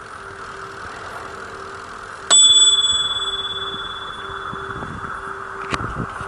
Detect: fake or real real